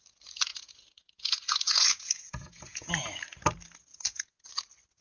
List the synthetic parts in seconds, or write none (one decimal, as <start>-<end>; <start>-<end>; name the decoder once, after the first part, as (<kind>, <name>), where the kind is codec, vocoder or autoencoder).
0.5-2.9 (vocoder, Vocos); 3.9-4.5